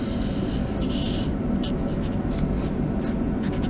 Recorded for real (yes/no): yes